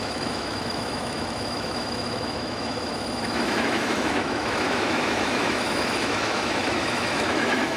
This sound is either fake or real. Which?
fake